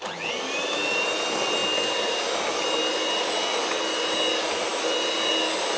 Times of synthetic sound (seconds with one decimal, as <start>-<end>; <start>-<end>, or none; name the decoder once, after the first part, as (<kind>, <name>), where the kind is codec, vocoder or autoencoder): none